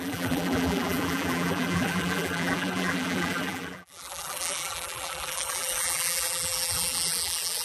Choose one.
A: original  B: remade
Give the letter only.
B